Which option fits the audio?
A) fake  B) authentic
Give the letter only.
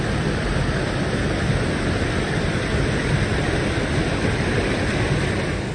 B